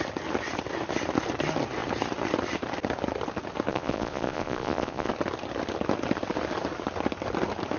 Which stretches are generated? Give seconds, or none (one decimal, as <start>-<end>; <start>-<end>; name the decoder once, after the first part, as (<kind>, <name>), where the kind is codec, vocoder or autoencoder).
3.7-5.1 (vocoder, Vocos)